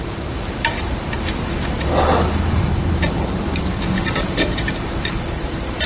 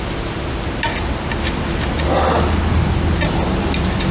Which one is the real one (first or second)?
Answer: second